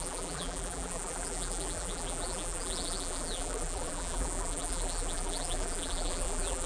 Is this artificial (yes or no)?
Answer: yes